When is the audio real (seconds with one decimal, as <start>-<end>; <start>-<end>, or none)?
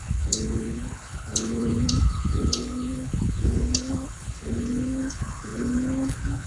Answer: none